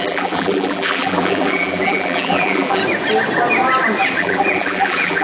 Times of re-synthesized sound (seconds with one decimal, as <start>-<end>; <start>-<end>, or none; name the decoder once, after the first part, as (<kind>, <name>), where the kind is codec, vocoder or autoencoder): 0.0-2.8 (vocoder, BigVGAN v2); 4.2-5.2